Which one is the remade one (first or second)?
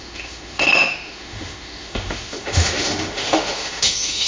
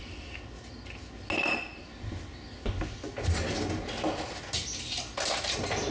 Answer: first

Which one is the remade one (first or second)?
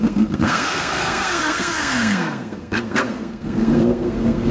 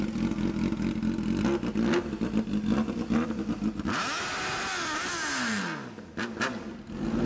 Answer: first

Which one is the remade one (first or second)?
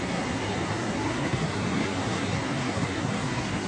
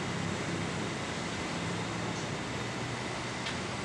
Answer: first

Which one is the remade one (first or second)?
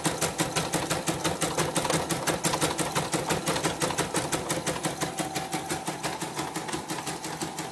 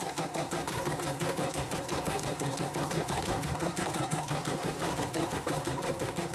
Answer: second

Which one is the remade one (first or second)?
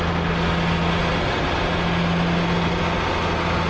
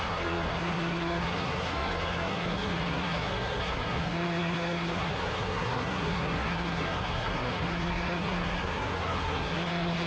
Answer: second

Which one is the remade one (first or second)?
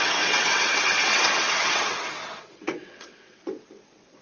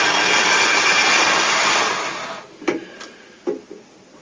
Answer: first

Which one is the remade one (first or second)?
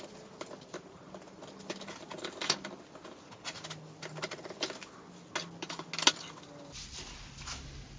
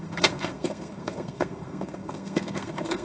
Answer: second